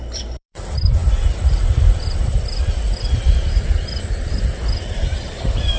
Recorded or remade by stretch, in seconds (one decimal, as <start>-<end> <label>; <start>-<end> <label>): 0.0-5.8 remade

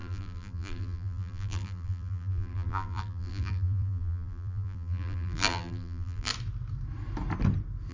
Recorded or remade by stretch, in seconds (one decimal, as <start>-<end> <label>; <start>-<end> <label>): 0.0-6.3 remade; 6.3-7.9 recorded

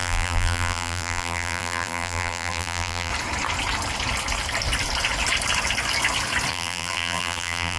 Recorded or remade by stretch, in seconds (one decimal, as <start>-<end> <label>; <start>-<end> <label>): 0.0-3.1 remade; 3.1-6.5 recorded; 6.5-7.8 remade

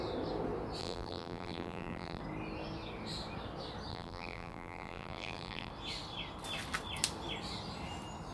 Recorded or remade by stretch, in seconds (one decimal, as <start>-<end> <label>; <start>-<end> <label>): 0.0-0.8 recorded; 0.8-2.2 remade; 2.2-3.9 recorded; 3.9-5.7 remade; 5.7-8.3 recorded